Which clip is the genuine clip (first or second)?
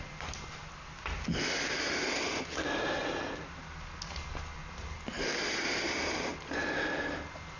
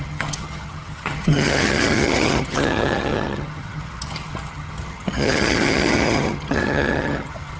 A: first